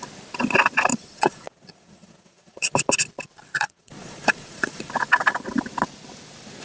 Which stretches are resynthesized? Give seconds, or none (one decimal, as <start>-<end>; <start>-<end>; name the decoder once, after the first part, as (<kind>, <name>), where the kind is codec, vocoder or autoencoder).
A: 0.9-2.7 (vocoder, Vocos); 3.5-4.9